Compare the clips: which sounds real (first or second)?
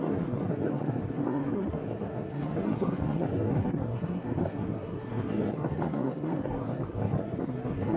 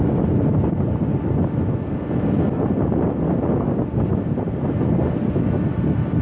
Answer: second